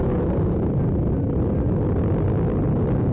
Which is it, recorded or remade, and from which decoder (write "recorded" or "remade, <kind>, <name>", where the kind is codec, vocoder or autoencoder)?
recorded